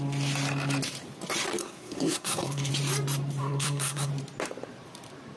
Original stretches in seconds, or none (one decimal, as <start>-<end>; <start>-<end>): 0.0-1.6; 2.7-3.4; 4.1-5.4